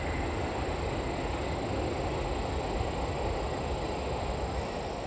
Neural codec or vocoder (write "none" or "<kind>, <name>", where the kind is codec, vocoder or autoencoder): none